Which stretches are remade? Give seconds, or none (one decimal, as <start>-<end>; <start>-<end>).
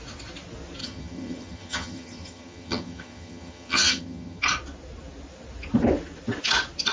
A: 0.8-4.4